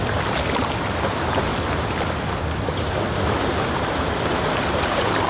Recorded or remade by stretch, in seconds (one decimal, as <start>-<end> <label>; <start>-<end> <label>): 0.0-5.3 recorded